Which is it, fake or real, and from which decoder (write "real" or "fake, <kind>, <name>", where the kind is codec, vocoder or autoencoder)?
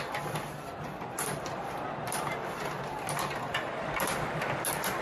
real